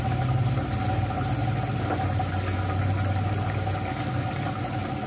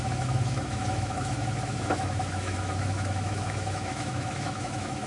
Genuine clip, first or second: first